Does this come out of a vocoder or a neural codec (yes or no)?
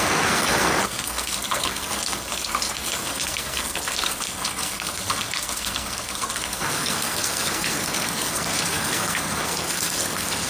yes